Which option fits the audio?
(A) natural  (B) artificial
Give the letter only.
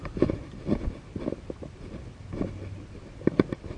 A